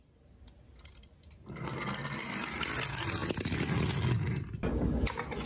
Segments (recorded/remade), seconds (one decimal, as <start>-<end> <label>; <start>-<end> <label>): 0.0-5.5 recorded